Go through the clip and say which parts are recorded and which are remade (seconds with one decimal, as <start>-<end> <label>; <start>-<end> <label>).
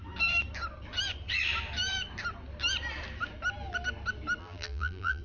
0.0-4.4 recorded; 4.4-5.2 remade